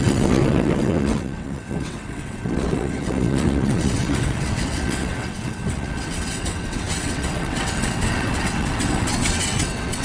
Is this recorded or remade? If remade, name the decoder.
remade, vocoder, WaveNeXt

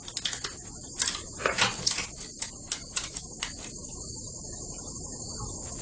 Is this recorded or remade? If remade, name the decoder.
recorded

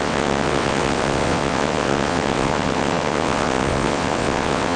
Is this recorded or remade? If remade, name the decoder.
remade, vocoder, WaveNeXt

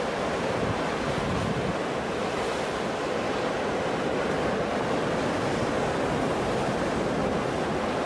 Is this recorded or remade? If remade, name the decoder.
recorded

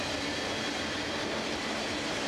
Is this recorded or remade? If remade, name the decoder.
recorded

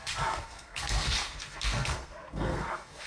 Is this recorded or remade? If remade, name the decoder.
remade, codec, SNAC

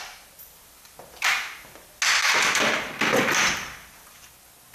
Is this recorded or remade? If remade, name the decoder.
recorded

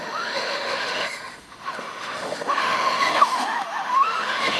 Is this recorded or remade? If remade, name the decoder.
remade, autoencoder, DAC-VAE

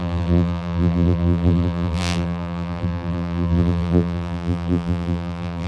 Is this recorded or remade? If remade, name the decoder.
remade, vocoder, BigVGAN v2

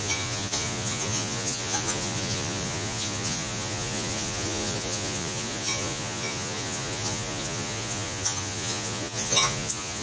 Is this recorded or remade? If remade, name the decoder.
remade, vocoder, Vocos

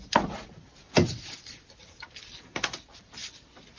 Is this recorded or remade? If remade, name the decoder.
recorded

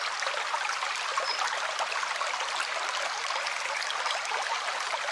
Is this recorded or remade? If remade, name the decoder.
recorded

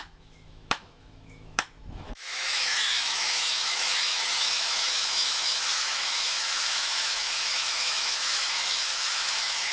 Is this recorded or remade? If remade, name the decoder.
remade, autoencoder, DAC-VAE